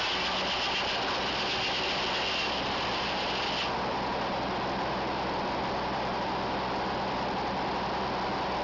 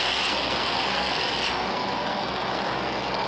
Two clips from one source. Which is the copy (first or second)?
second